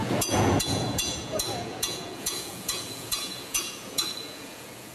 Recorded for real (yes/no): no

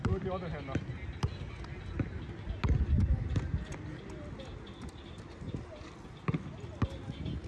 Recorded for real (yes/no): yes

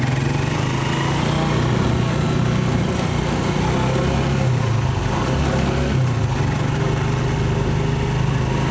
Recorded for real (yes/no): yes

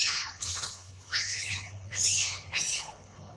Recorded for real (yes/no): no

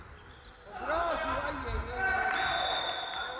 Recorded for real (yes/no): yes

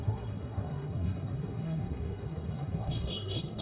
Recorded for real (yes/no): no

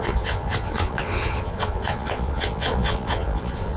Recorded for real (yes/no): no